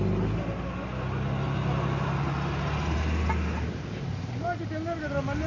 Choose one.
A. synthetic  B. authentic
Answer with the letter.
B